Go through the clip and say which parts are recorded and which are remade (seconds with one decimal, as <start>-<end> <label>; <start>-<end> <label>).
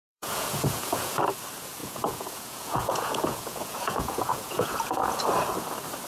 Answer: 0.0-1.2 remade; 1.2-1.8 recorded; 1.8-5.2 remade; 5.2-6.1 recorded